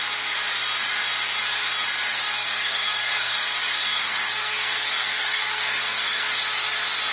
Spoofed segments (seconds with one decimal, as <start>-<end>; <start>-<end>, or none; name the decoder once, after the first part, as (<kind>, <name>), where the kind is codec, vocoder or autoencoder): 2.1-6.4 (codec, SNAC)